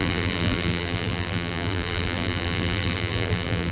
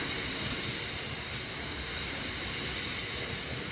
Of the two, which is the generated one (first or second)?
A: first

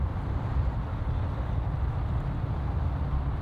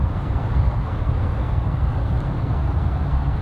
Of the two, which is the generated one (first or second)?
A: second